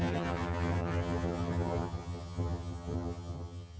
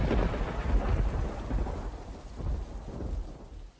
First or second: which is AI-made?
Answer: first